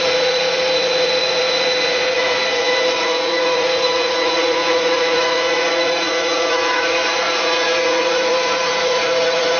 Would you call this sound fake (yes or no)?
yes